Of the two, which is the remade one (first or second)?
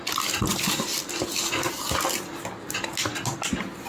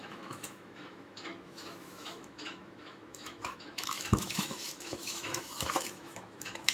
second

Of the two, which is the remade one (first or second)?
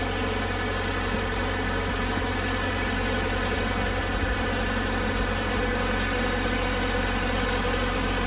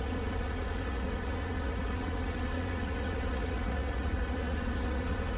second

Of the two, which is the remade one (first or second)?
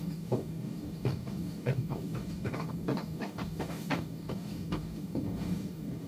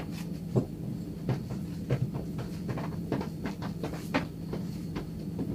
first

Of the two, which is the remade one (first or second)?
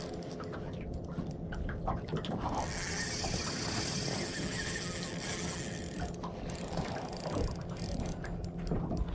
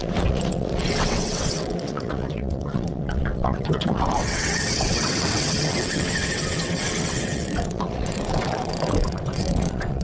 second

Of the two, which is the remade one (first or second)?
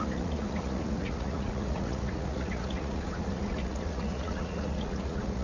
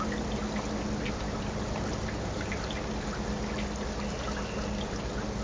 first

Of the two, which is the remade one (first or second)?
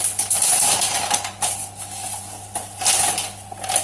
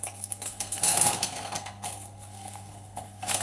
second